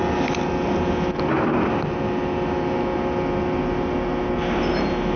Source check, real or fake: real